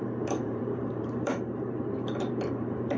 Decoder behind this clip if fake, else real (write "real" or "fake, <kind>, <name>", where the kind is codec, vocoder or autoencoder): fake, vocoder, BigVGAN v2